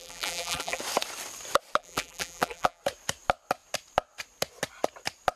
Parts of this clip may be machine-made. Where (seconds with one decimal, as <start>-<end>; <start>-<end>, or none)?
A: 0.0-0.8; 1.8-2.8